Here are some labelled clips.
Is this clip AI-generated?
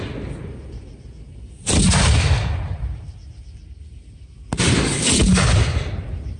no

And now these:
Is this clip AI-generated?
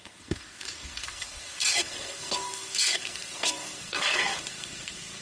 yes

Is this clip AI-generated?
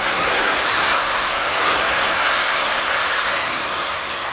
yes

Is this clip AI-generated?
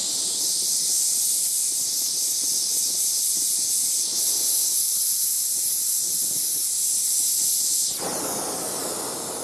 no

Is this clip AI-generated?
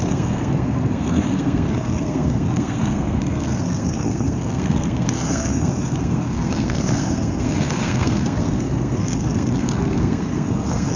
yes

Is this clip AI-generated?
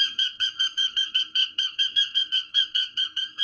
yes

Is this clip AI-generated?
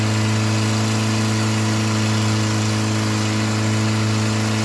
no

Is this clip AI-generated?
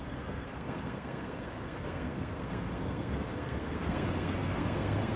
yes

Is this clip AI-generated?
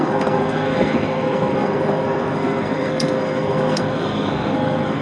yes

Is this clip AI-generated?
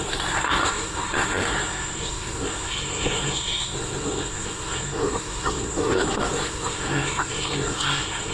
yes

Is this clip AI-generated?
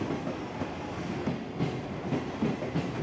no